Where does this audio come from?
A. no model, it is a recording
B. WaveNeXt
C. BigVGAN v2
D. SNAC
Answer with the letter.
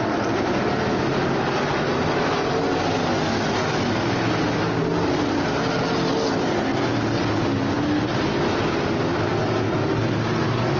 A